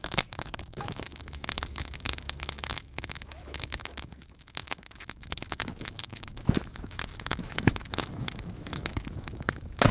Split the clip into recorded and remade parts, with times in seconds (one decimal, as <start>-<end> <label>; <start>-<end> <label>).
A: 0.0-9.9 remade